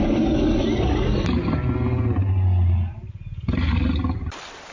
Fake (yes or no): no